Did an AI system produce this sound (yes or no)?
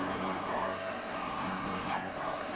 yes